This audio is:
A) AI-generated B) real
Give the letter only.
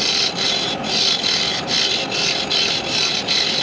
B